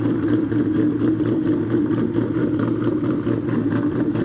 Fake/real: fake